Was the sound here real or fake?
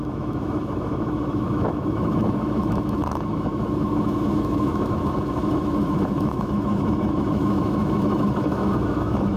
fake